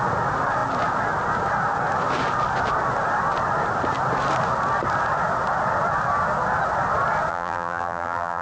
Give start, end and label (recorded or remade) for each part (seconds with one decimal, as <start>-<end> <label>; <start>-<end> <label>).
0.0-7.3 recorded; 7.3-8.4 remade